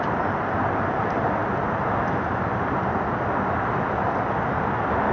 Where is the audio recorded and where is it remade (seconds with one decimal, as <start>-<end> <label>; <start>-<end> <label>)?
0.0-5.1 recorded